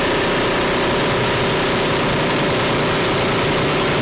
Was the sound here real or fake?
real